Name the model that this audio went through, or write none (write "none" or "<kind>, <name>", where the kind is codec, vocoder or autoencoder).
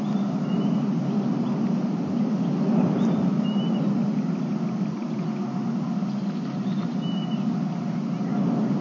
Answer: none